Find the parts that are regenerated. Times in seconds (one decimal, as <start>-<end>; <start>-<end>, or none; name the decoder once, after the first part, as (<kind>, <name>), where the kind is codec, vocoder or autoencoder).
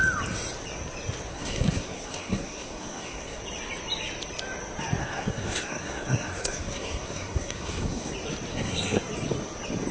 1.3-3.4 (codec, SNAC); 5.0-8.1; 8.5-9.0